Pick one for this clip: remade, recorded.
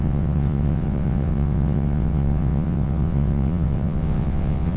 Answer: remade